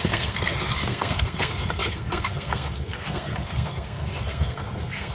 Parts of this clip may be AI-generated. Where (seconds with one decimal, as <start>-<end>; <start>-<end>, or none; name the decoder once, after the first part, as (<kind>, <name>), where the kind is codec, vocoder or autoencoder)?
0.0-5.1 (codec, SNAC)